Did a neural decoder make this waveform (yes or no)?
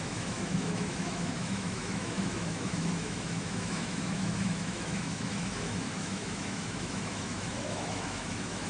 yes